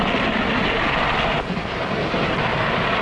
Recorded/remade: recorded